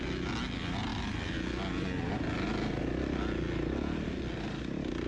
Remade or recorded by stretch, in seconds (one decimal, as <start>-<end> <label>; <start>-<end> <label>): 0.0-5.1 recorded